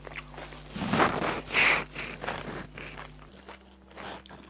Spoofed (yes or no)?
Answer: no